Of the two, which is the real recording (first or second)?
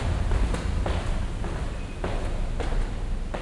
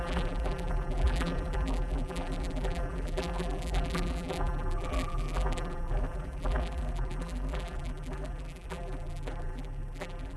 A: first